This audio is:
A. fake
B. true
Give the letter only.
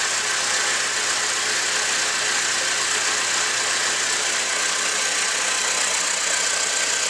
B